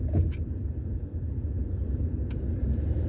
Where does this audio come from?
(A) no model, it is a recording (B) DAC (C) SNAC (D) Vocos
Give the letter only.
A